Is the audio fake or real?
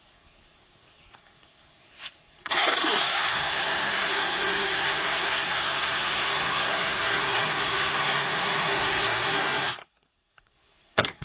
fake